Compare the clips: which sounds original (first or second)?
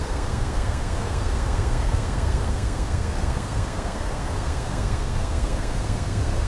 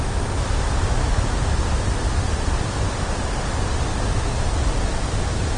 second